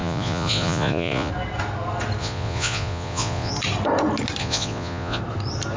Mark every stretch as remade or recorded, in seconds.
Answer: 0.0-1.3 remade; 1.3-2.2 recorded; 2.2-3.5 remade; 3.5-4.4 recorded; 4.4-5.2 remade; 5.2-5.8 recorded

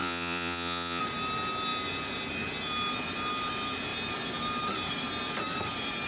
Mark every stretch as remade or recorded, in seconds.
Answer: 0.0-1.0 remade; 1.0-6.1 recorded

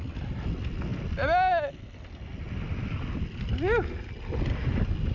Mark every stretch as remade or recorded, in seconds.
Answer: 0.0-5.1 recorded

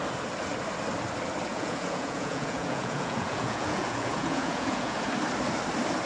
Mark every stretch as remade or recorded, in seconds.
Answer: 0.0-1.5 recorded; 1.5-5.1 remade; 5.1-6.1 recorded

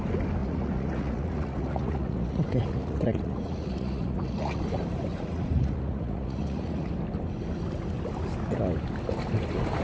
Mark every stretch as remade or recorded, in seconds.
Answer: 0.0-0.4 recorded; 0.4-4.6 remade; 4.6-5.1 recorded; 5.1-6.9 remade; 6.9-9.8 recorded

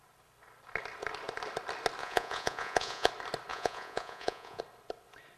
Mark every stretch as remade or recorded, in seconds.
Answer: 0.0-2.0 recorded; 2.0-3.1 remade; 3.1-3.5 recorded; 3.5-4.6 remade; 4.6-5.4 recorded

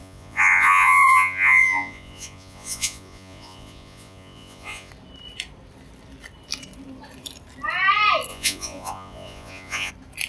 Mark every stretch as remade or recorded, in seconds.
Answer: 0.0-4.9 remade; 4.9-8.3 recorded; 8.3-9.9 remade; 9.9-10.3 recorded